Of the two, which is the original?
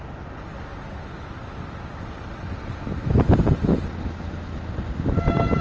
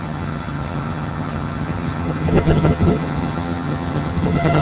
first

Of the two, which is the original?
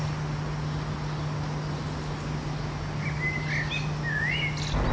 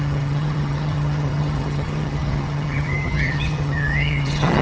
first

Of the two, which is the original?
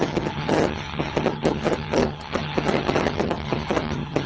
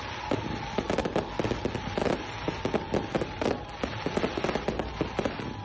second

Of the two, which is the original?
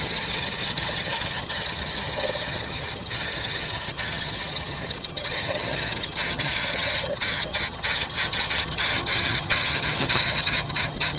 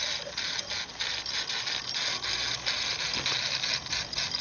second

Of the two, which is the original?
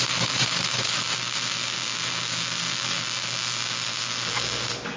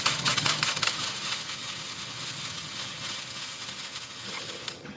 first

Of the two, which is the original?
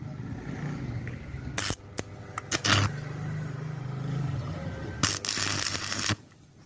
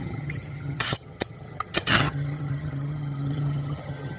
first